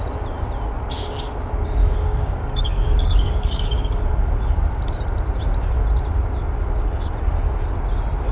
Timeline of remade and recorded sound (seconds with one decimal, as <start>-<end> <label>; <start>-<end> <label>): 0.0-1.8 recorded; 1.8-4.0 remade; 4.0-8.3 recorded